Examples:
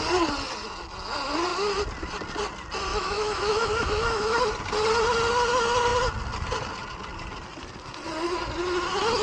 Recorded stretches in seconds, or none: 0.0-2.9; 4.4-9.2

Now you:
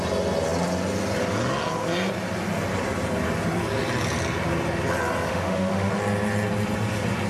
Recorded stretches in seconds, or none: 0.0-5.3; 5.9-7.3